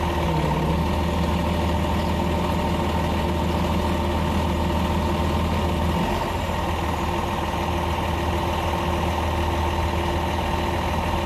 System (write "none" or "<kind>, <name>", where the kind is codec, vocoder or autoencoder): none